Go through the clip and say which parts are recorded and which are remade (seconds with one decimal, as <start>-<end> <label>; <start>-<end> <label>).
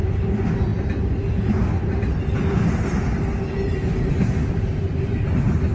0.0-5.7 recorded